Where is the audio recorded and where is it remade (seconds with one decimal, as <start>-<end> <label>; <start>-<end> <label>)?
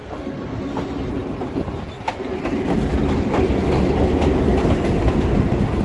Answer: 0.0-5.8 recorded